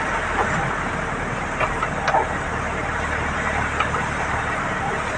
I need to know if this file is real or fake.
real